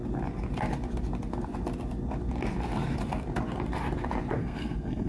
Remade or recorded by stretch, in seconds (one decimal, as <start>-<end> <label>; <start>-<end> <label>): 0.0-4.4 recorded; 4.4-5.1 remade